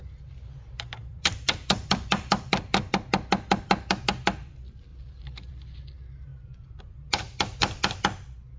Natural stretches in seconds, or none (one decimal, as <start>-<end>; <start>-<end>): 0.0-1.0; 2.9-4.9; 5.5-6.3; 6.8-8.6

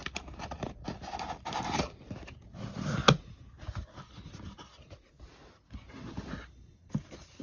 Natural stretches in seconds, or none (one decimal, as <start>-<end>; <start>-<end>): 1.8-7.4

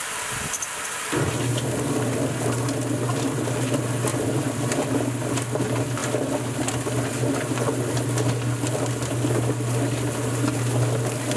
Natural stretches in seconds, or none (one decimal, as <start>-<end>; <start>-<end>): 0.0-4.1; 4.9-11.4

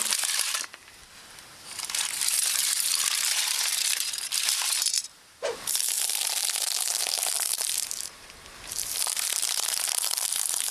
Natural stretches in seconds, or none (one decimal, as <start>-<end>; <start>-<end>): 1.0-1.6

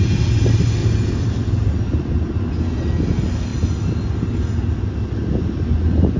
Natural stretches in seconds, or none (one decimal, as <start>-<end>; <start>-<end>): 0.0-0.8; 2.5-6.2

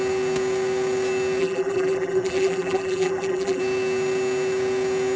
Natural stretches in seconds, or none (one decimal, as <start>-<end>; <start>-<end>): 0.0-1.4; 3.6-5.2

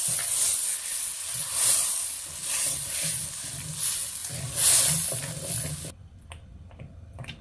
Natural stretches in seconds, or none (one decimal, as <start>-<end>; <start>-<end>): 0.0-0.7; 1.7-4.2; 5.5-7.4

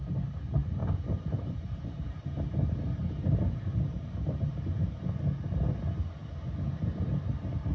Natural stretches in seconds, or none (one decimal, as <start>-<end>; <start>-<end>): 0.0-0.8; 5.0-7.7